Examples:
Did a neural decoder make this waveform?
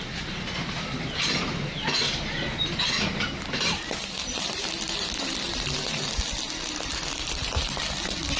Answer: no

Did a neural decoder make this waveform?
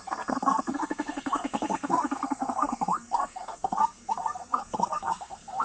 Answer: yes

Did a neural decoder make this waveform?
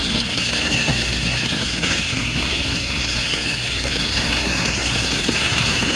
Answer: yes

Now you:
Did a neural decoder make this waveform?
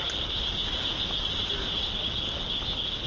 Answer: no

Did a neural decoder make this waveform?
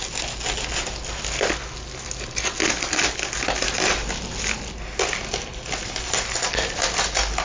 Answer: no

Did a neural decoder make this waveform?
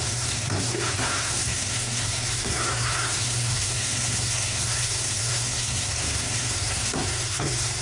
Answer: yes